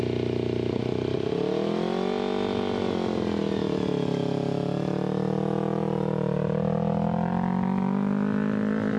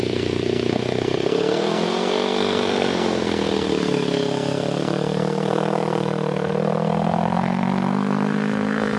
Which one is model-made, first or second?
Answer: second